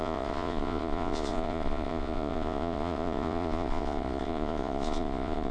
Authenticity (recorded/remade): remade